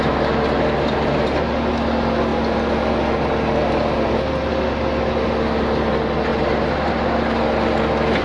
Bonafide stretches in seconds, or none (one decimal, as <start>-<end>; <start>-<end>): 0.0-8.2